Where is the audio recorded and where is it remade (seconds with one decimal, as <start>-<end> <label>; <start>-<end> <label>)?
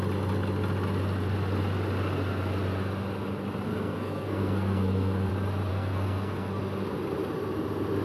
0.0-3.7 recorded; 3.7-5.3 remade; 5.3-5.7 recorded; 5.7-6.6 remade; 6.6-8.0 recorded